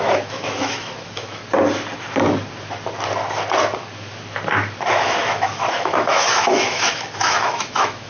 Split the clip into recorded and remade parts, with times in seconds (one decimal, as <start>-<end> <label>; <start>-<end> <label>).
0.0-1.4 remade; 1.4-4.9 recorded; 4.9-8.1 remade